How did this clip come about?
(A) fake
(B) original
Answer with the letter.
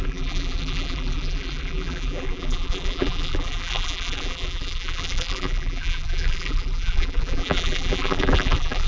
A